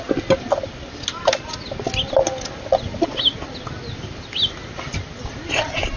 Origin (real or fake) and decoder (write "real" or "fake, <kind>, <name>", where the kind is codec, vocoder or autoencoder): real